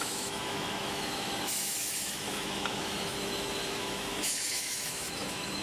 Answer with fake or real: fake